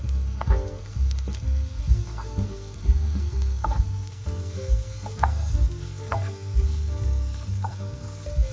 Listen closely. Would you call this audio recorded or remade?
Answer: remade